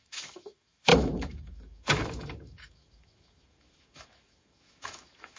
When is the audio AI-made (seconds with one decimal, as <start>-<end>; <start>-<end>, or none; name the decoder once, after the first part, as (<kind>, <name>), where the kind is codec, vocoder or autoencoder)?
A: 0.0-5.4 (autoencoder, DAC-VAE)